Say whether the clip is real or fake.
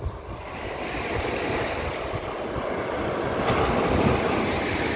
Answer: real